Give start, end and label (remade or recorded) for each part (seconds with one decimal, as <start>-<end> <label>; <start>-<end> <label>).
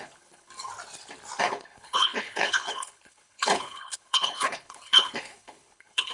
0.0-0.5 remade; 0.5-1.4 recorded; 1.4-6.1 remade